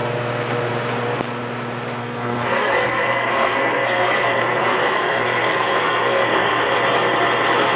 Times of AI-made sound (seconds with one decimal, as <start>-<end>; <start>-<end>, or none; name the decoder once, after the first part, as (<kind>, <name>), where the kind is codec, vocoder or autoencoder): 2.0-6.7 (codec, SNAC)